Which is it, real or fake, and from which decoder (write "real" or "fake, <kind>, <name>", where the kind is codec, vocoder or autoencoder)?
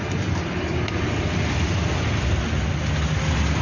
real